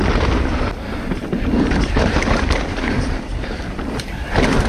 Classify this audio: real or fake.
fake